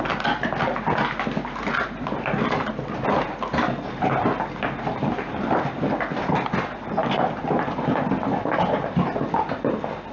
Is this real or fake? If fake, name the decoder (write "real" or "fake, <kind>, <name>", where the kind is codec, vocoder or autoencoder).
real